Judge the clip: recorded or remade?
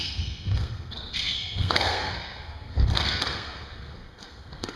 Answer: remade